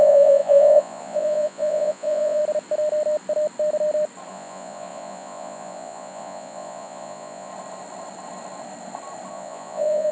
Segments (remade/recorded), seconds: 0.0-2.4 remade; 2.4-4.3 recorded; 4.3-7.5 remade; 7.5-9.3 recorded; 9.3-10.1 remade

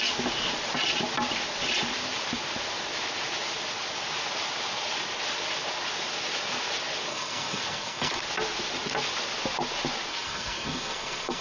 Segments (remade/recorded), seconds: 0.0-7.1 recorded; 7.1-8.2 remade; 8.2-10.1 recorded; 10.1-11.4 remade

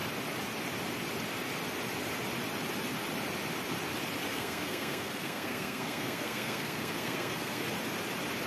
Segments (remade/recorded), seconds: 0.0-4.3 recorded; 4.3-7.6 remade; 7.6-8.5 recorded

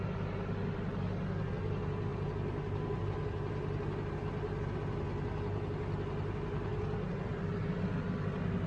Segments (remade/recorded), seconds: 0.0-8.7 recorded

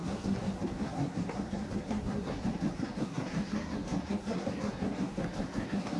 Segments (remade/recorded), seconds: 0.0-6.0 remade

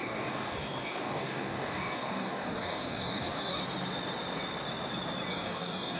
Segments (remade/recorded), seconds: 0.0-3.6 remade; 3.6-5.3 recorded; 5.3-6.0 remade

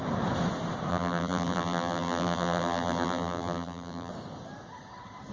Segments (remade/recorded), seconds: 0.0-0.9 recorded; 0.9-4.1 remade; 4.1-5.3 recorded

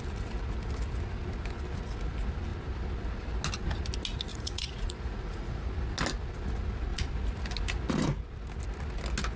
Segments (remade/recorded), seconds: 0.0-4.3 recorded; 4.3-5.7 remade; 5.7-9.4 recorded